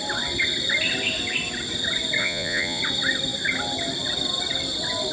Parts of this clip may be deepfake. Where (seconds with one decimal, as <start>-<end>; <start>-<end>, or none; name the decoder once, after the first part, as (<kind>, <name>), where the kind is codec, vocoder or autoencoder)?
2.2-2.8 (vocoder, Vocos)